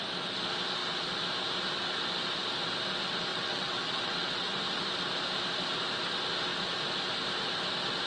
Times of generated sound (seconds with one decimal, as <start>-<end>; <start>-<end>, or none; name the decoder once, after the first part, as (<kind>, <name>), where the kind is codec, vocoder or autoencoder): 3.3-4.6 (vocoder, WaveNeXt)

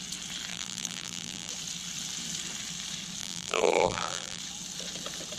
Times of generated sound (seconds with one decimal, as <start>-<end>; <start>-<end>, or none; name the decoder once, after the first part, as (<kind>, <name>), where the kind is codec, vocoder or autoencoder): 0.5-1.5 (vocoder, BigVGAN v2); 3.2-4.4

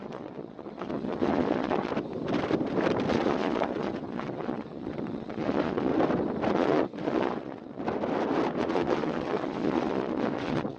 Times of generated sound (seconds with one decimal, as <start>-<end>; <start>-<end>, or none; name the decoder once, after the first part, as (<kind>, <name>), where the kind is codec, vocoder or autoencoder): 0.0-1.9 (vocoder, Vocos); 3.1-5.9; 6.5-7.8; 8.6-10.8

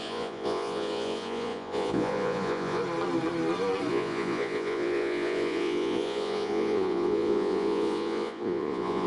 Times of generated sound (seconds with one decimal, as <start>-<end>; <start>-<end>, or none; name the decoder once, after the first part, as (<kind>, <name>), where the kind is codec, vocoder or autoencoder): 0.0-2.8 (vocoder, Vocos); 3.9-9.1